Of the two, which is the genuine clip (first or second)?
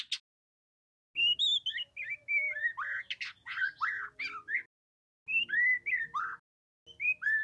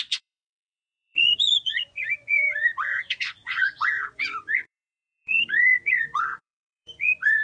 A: first